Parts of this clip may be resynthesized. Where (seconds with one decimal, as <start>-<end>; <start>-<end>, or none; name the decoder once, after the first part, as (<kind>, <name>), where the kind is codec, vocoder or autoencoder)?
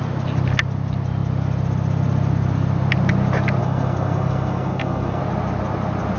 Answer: 3.6-5.2 (codec, SNAC)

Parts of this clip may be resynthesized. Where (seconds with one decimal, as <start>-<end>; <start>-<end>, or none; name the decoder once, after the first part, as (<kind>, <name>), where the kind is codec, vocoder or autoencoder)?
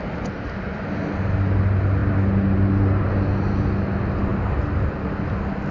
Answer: none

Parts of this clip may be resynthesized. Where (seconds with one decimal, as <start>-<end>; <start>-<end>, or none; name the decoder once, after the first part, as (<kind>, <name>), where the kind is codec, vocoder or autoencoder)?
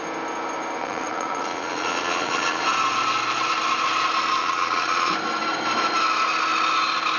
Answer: 0.8-2.6 (vocoder, Vocos); 4.4-5.1